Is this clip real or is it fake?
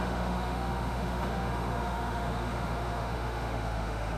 fake